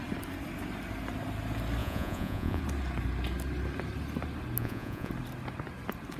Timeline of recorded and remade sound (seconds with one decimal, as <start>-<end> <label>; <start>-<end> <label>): 0.0-1.8 recorded; 1.8-2.6 remade; 2.6-4.6 recorded; 4.6-5.1 remade; 5.1-6.2 recorded